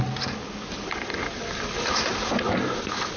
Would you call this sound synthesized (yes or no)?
no